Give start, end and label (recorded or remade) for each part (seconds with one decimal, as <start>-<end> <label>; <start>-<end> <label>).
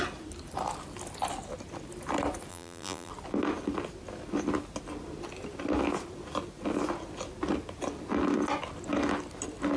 0.0-2.5 recorded; 2.5-3.1 remade; 3.1-9.8 recorded